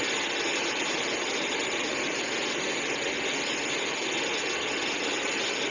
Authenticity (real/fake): real